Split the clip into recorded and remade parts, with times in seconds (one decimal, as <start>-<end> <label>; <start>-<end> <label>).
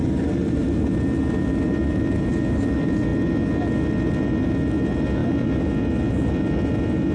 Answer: 0.0-7.1 recorded